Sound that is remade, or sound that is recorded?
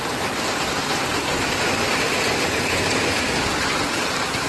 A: recorded